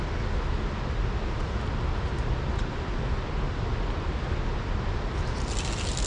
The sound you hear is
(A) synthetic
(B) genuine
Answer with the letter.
B